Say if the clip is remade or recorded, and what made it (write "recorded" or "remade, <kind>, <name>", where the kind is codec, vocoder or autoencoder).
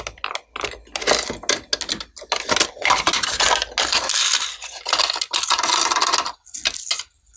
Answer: recorded